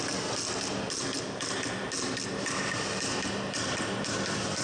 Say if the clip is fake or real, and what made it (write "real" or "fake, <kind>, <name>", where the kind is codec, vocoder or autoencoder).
real